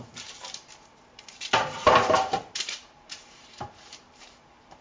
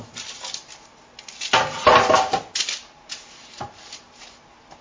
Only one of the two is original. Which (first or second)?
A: second